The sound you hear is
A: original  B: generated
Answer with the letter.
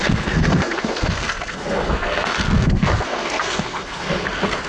B